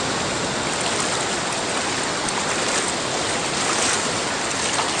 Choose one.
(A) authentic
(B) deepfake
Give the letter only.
A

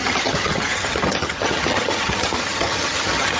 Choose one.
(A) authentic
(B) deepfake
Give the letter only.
B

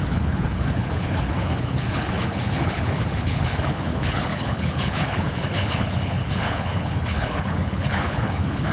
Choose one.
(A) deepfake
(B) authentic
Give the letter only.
A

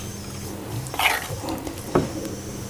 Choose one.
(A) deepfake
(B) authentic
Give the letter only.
B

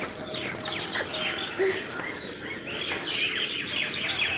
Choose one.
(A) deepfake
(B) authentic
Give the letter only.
B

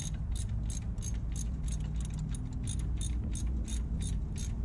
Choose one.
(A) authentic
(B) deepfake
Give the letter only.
A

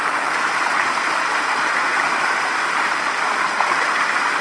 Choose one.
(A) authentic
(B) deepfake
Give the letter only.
A